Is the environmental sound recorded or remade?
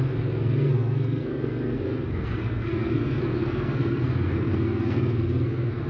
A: remade